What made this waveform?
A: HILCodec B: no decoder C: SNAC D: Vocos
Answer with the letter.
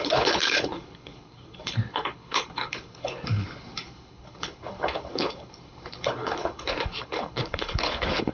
A